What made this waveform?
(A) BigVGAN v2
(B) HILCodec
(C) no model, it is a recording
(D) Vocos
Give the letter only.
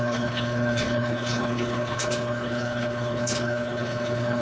B